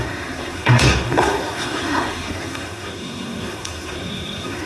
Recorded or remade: remade